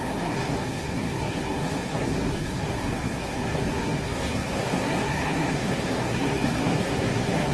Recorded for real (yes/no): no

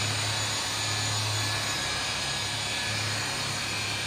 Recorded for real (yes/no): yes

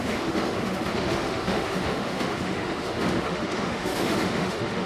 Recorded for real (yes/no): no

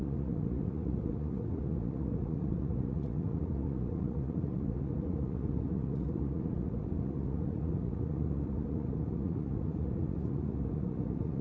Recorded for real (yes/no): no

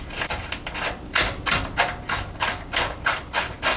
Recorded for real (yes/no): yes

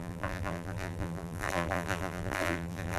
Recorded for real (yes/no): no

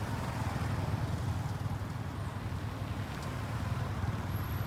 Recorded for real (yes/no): yes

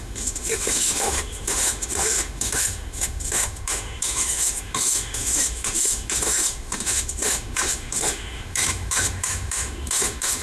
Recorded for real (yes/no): no